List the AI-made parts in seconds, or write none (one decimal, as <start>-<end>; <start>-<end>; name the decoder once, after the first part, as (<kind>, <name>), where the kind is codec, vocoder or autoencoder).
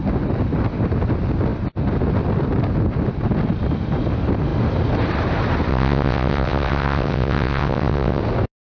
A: 5.7-8.2 (vocoder, WaveNeXt)